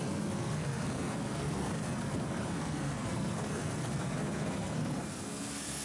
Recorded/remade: remade